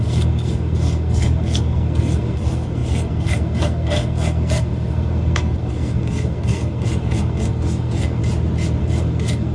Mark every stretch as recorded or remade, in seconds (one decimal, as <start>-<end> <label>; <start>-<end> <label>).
0.0-8.2 remade; 8.2-8.8 recorded; 8.8-9.5 remade

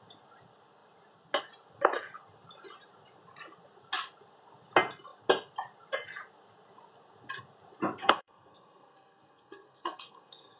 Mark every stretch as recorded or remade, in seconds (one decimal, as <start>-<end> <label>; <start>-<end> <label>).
0.0-8.0 recorded; 8.0-10.6 remade